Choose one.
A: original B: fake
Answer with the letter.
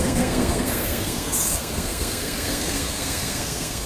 B